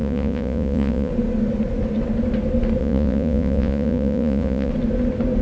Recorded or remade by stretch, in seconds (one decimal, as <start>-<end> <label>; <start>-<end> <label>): 0.0-1.1 remade; 1.1-2.8 recorded; 2.8-4.7 remade; 4.7-5.4 recorded